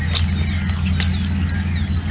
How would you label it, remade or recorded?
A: recorded